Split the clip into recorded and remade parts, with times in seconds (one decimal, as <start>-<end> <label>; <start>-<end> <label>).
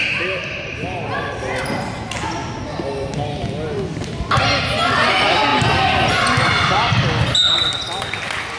0.0-8.6 recorded